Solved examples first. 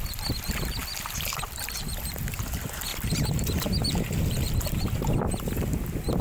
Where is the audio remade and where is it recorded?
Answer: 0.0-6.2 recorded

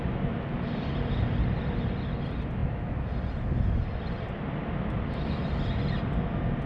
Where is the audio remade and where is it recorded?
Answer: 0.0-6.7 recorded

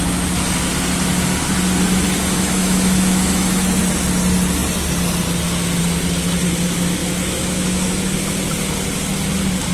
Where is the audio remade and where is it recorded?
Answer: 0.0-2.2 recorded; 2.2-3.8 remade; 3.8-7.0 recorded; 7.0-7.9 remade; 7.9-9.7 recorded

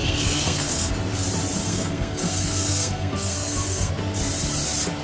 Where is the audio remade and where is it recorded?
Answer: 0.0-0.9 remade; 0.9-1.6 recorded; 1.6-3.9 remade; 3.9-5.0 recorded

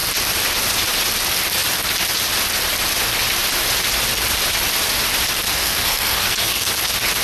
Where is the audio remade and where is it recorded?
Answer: 0.0-5.6 recorded; 5.6-6.7 remade; 6.7-7.2 recorded